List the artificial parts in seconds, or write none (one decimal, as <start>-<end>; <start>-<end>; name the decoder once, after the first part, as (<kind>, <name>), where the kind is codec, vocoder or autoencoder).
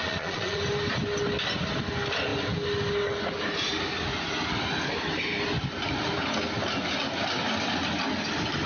0.0-0.6 (vocoder, Vocos)